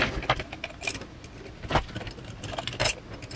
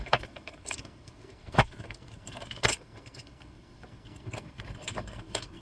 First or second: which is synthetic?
second